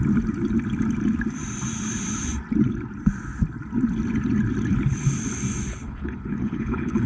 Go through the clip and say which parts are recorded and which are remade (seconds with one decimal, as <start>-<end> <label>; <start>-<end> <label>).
0.0-5.7 recorded; 5.7-7.1 remade